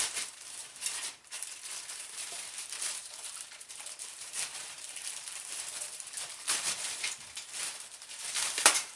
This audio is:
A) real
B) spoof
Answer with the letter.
B